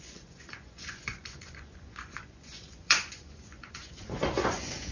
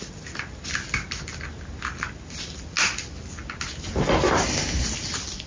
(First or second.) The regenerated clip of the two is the first